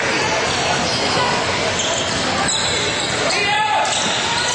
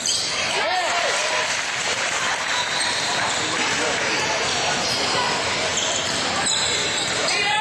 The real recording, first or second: first